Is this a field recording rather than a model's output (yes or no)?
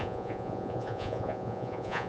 no